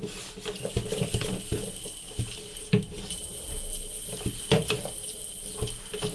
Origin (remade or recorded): recorded